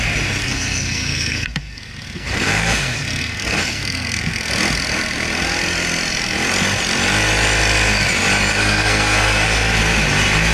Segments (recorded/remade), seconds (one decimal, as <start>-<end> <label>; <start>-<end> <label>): 0.0-0.4 recorded; 0.4-4.5 remade; 4.5-8.5 recorded; 8.5-9.8 remade; 9.8-10.5 recorded